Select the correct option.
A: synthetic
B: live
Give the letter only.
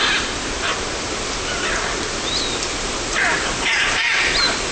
B